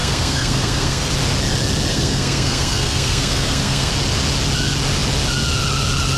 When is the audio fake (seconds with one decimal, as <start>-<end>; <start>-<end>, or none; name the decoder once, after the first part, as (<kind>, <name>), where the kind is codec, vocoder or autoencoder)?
0.0-1.1 (codec, SNAC); 1.9-3.9